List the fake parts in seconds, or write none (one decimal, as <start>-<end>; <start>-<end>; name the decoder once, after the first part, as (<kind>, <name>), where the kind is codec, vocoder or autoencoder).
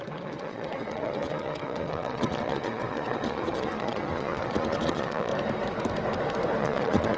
0.0-5.3 (vocoder, Vocos); 6.6-7.2